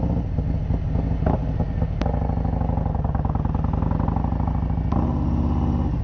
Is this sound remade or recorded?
recorded